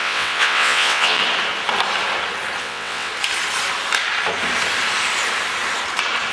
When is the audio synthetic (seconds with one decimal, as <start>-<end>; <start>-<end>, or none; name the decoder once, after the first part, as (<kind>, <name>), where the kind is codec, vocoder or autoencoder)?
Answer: 0.0-1.2 (vocoder, WaveNeXt); 2.6-3.1